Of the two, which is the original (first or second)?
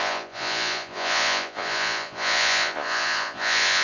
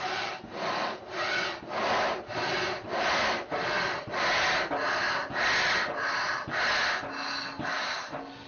second